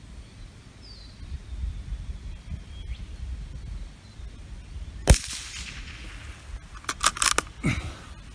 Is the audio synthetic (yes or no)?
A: no